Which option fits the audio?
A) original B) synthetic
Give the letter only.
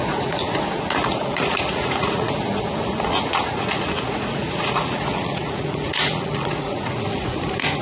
B